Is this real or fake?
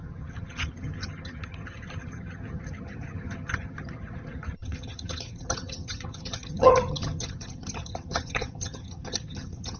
fake